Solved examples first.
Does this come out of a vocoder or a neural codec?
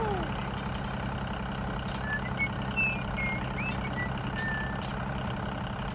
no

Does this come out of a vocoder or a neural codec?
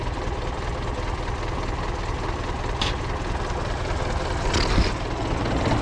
no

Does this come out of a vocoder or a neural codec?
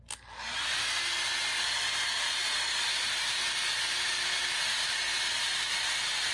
no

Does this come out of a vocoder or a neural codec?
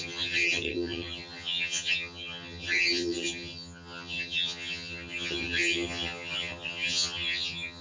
yes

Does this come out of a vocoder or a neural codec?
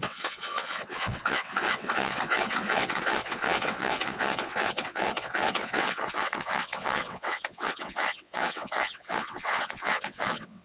yes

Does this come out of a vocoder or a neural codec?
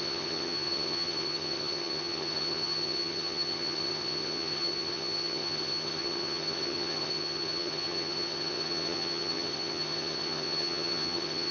yes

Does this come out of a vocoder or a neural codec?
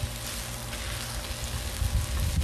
no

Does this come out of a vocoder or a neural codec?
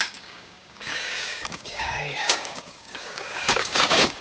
yes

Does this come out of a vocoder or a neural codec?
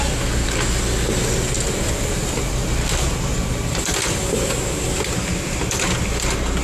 no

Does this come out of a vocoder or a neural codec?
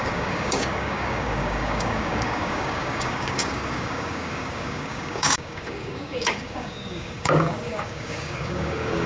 yes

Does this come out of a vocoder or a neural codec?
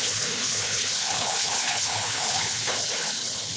yes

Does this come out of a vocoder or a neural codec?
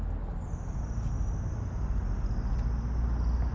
no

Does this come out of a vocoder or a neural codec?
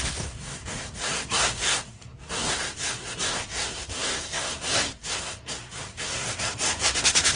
yes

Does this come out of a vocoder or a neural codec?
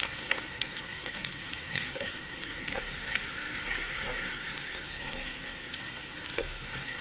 yes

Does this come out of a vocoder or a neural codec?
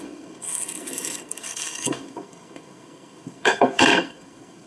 yes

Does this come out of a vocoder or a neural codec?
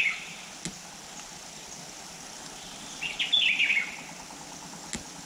no